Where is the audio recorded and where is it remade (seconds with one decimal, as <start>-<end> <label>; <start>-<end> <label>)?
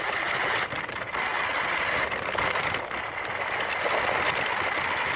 0.0-5.2 recorded